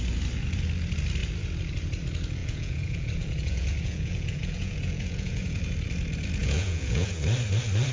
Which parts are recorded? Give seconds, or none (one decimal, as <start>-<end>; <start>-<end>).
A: 0.0-2.4; 5.6-6.4; 7.1-7.9